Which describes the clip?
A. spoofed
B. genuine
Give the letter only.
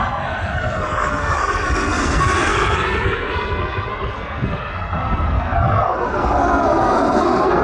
A